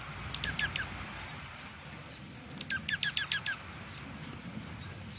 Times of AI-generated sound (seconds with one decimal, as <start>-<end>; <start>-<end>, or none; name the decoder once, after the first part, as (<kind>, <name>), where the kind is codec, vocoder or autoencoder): none